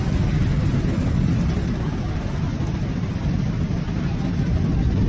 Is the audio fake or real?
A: real